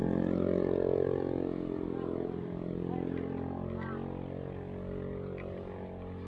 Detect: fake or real real